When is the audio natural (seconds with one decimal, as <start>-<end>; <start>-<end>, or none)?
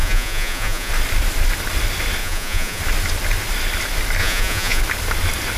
0.9-2.2; 2.8-4.2; 4.8-5.6